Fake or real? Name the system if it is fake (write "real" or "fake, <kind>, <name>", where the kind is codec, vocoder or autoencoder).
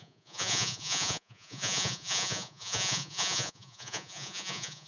fake, vocoder, Vocos